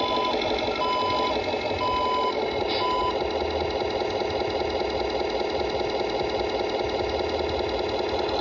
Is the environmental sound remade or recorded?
recorded